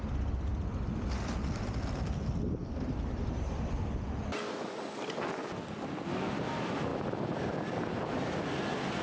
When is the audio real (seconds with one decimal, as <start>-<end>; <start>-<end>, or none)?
0.0-9.0